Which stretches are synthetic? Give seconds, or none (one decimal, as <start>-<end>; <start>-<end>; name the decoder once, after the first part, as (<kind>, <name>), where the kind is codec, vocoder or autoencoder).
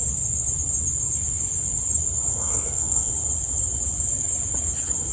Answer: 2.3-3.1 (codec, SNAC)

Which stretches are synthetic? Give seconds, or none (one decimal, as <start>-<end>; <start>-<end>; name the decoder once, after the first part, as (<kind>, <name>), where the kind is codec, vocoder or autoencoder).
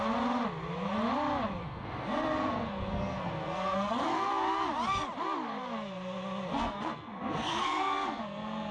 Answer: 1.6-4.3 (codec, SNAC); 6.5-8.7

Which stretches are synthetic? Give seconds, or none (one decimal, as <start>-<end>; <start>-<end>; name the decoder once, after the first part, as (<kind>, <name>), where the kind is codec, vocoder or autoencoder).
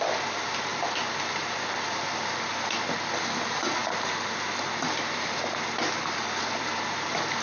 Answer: none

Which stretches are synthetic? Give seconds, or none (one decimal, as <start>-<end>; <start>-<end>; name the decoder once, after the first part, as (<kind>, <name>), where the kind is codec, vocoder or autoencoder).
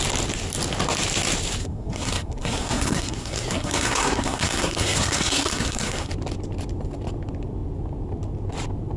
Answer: 1.6-6.1 (codec, SNAC)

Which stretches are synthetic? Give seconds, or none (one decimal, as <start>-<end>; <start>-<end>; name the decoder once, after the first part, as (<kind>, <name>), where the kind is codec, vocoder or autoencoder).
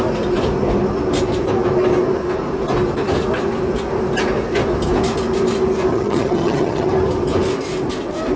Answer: 5.9-6.9 (vocoder, HiFi-GAN)